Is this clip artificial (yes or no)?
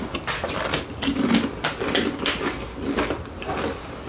no